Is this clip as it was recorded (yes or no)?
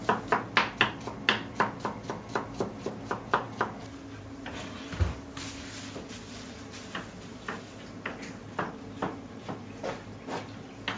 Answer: yes